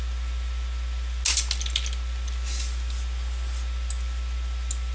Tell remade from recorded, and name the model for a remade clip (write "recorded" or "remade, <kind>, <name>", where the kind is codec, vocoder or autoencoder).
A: recorded